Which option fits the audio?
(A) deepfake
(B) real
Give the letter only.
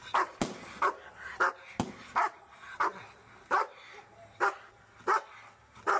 B